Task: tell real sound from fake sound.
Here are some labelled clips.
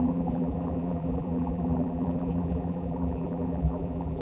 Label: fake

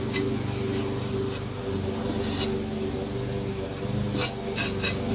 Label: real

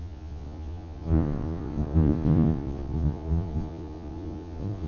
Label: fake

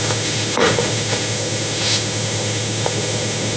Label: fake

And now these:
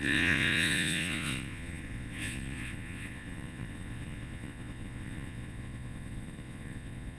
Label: fake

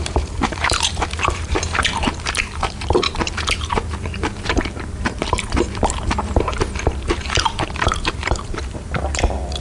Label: fake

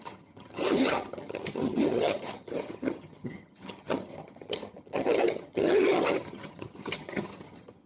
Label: fake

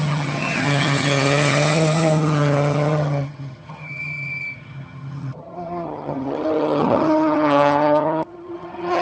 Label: fake